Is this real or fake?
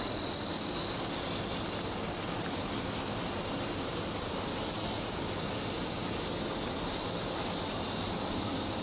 real